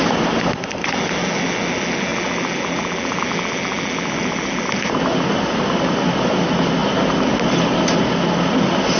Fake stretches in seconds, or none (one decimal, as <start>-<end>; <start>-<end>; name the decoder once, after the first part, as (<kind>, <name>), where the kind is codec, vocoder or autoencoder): none